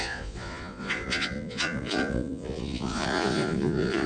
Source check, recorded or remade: remade